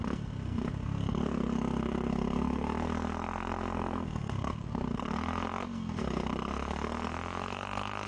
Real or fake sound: fake